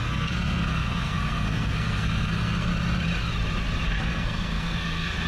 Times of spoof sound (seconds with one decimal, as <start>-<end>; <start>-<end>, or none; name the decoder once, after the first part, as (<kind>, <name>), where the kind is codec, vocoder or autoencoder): 0.0-2.7 (codec, SNAC); 4.0-5.3